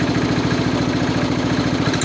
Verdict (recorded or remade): recorded